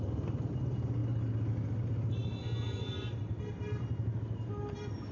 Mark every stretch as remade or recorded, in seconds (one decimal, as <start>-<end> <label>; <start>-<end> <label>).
0.0-5.1 recorded